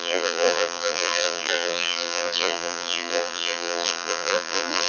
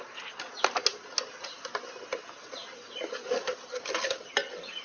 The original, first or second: second